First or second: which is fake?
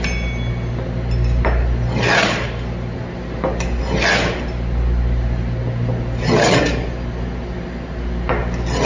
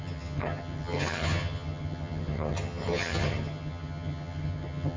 second